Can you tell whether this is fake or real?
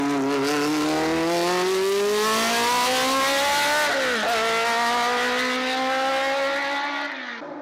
real